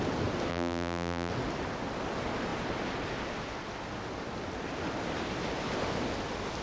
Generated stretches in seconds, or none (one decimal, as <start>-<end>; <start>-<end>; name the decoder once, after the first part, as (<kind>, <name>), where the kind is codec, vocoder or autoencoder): 0.5-1.3 (vocoder, BigVGAN v2)